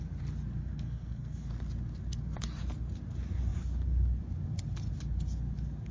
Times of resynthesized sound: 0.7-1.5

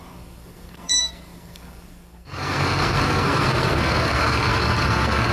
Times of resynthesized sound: 0.0-5.3

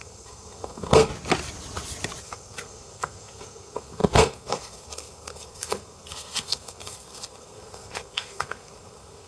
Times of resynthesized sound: 0.0-1.1; 2.2-9.3